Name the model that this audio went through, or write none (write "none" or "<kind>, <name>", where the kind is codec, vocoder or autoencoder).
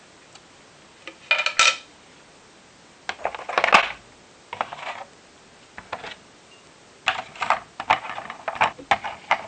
none